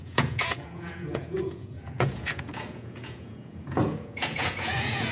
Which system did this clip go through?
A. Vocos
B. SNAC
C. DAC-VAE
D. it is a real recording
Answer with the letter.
A